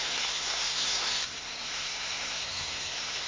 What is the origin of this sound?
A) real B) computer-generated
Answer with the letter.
B